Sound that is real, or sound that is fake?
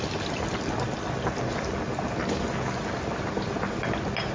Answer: real